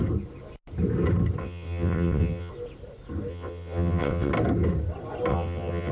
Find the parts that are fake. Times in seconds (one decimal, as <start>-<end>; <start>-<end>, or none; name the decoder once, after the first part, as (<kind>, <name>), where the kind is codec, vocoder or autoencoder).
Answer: 1.4-2.5 (vocoder, WaveNeXt); 3.3-4.3; 5.3-5.9